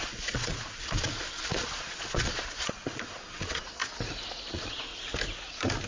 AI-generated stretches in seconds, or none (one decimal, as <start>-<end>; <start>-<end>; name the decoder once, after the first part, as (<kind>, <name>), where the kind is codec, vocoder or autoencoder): 0.0-3.8 (vocoder, Vocos); 4.5-4.9